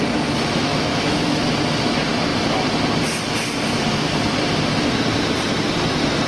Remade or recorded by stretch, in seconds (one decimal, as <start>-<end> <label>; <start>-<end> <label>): 0.0-0.7 recorded; 0.7-1.6 remade; 1.6-6.3 recorded